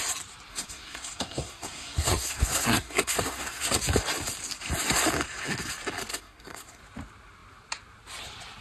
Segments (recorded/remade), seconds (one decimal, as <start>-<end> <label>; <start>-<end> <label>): 0.0-0.5 recorded; 0.5-3.8 remade; 3.8-6.1 recorded; 6.1-6.8 remade; 6.8-8.6 recorded